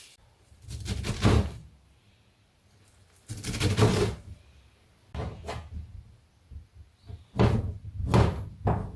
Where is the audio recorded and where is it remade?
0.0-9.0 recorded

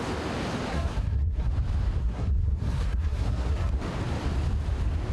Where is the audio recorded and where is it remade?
0.0-0.7 recorded; 0.7-1.5 remade; 1.5-2.0 recorded; 2.0-3.7 remade; 3.7-5.1 recorded

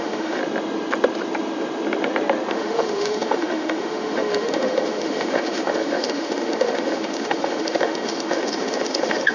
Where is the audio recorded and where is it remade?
0.0-0.4 remade; 0.4-2.5 recorded; 2.5-9.3 remade

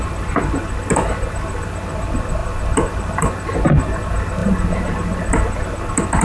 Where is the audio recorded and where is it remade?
0.0-6.2 recorded

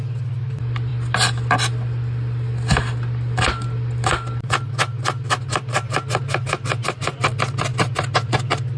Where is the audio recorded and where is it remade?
0.0-8.8 recorded

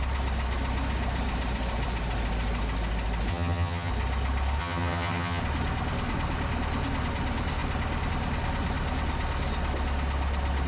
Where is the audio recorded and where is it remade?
0.0-3.3 recorded; 3.3-3.9 remade; 3.9-4.6 recorded; 4.6-5.4 remade; 5.4-10.7 recorded

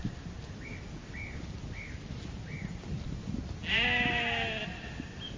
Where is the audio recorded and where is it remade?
0.0-5.4 recorded

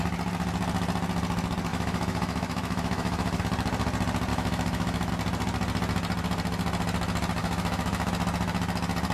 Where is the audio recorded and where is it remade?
0.0-1.7 recorded; 1.7-3.4 remade; 3.4-4.3 recorded; 4.3-5.1 remade; 5.1-7.4 recorded; 7.4-8.1 remade; 8.1-9.1 recorded